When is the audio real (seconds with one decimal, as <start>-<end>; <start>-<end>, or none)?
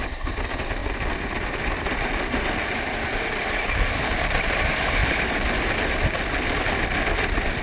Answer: 0.0-7.6